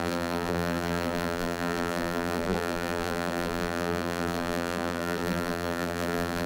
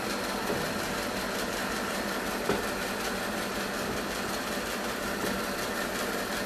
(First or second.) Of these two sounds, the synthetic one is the first